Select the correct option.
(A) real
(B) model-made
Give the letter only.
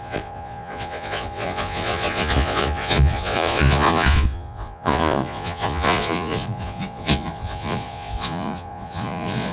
B